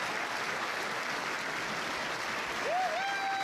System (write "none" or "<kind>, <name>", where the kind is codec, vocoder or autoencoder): none